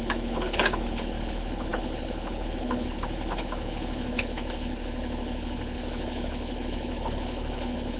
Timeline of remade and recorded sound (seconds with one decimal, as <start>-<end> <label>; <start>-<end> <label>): 0.0-8.0 remade